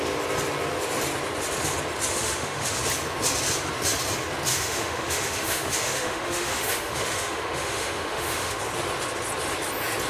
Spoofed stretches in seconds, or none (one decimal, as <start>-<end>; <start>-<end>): 2.1-2.8; 4.5-8.6

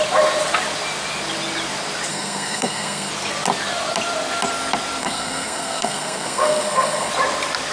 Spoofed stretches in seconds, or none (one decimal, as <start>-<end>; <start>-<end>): 2.1-3.1; 5.0-7.1

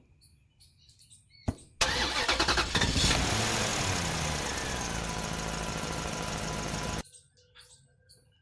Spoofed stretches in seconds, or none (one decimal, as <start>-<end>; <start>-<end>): none